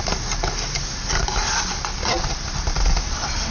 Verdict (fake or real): real